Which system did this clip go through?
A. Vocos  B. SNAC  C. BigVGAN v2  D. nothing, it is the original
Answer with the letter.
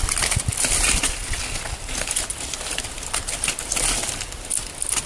D